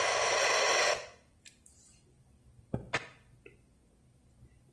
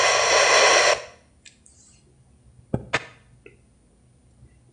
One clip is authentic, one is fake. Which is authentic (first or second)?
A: second